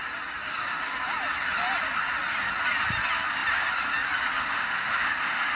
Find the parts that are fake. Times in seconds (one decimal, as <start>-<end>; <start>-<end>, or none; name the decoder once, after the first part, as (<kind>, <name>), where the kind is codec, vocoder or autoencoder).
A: 4.4-5.6 (autoencoder, DAC-VAE)